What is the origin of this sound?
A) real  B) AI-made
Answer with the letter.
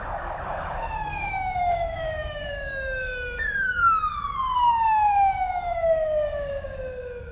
B